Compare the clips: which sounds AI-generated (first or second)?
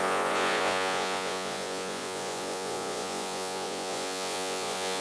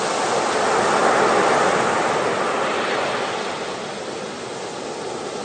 first